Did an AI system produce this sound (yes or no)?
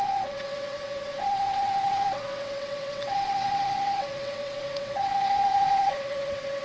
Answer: yes